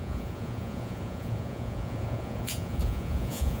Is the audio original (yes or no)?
no